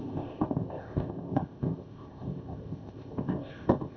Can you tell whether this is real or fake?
fake